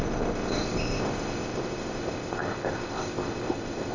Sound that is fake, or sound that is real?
fake